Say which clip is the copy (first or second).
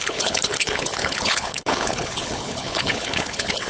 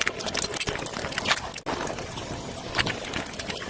first